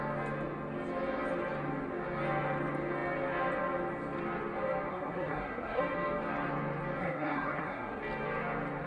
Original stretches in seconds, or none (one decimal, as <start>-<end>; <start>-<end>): 0.0-4.9; 5.8-7.0; 8.0-8.9